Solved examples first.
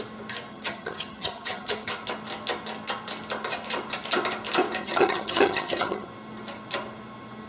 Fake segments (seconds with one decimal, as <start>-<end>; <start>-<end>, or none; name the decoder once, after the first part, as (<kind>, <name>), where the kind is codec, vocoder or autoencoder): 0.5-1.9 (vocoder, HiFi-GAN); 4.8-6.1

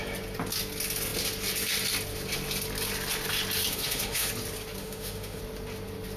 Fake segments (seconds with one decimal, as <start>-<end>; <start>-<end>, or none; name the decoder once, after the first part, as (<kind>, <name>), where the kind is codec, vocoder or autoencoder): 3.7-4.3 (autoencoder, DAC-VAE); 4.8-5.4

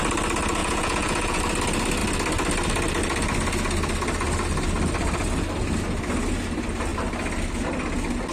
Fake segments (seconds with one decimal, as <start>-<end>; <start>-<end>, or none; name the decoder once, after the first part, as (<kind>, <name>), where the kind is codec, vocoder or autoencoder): 0.6-1.4 (vocoder, Vocos)

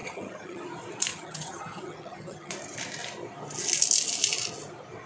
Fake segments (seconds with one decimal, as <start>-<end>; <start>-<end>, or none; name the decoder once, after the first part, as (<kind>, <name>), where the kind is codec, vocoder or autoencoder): 0.0-0.6 (vocoder, HiFi-GAN); 1.1-2.5